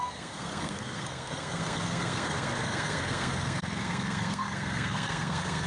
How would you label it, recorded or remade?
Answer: remade